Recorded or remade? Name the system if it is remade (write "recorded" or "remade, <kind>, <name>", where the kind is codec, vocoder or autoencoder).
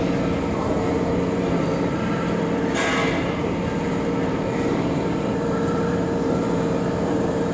remade, vocoder, BigVGAN v2